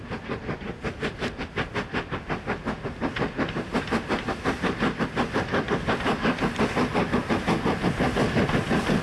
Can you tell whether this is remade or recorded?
recorded